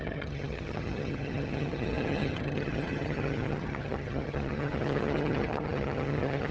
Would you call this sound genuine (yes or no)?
no